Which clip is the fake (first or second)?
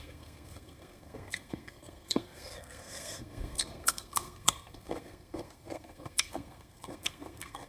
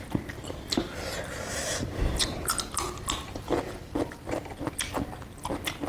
first